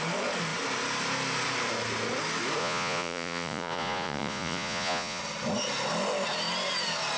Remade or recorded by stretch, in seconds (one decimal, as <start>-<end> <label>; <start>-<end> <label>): 0.0-2.6 recorded; 2.6-5.2 remade; 5.2-7.2 recorded